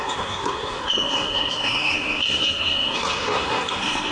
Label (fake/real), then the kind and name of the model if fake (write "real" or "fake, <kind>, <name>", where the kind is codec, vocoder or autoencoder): fake, codec, SNAC